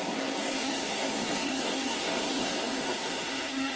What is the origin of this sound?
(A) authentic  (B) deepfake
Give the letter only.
B